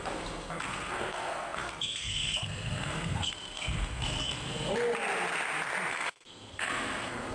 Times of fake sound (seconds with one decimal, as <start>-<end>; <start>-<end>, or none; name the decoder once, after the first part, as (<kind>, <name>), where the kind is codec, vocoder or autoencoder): 0.0-4.7 (codec, SNAC); 5.9-7.3